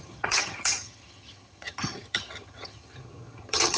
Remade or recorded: remade